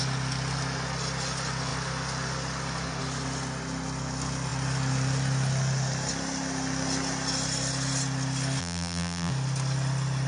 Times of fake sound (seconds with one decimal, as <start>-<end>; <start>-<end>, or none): 8.6-9.3